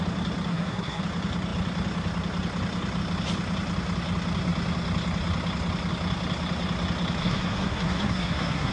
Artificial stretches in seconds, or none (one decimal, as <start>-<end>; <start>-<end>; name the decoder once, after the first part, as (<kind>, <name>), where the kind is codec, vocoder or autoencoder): 0.5-1.0 (codec, SNAC); 7.2-8.7